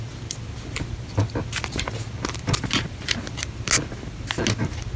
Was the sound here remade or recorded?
recorded